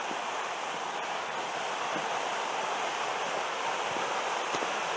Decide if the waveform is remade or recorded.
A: recorded